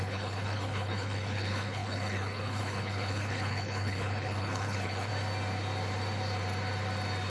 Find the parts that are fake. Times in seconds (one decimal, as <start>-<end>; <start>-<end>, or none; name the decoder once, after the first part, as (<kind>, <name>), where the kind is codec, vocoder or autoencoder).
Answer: 0.0-5.1 (codec, HILCodec)